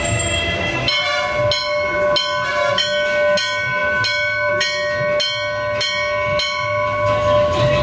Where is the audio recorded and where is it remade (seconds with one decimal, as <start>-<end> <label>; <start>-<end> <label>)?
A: 0.0-7.8 recorded